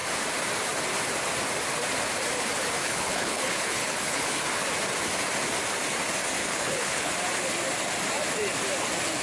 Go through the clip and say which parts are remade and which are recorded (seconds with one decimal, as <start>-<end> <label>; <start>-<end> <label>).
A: 0.0-2.8 recorded; 2.8-4.4 remade; 4.4-6.4 recorded; 6.4-7.1 remade; 7.1-9.2 recorded